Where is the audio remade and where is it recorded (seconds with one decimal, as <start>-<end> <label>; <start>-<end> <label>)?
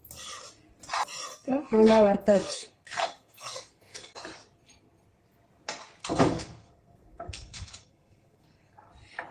0.0-1.3 recorded; 1.3-4.2 remade; 4.2-6.0 recorded; 6.0-8.9 remade; 8.9-9.3 recorded